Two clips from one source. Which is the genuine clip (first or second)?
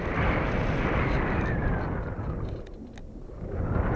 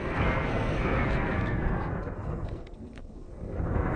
first